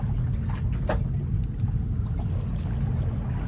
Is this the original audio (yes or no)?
yes